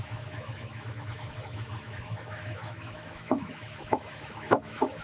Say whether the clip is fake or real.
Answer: fake